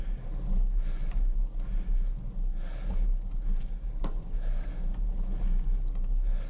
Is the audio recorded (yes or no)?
yes